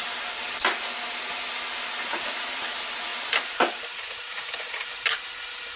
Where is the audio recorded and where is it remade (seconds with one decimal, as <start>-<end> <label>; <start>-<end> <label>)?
0.0-3.1 recorded; 3.1-4.9 remade; 4.9-5.8 recorded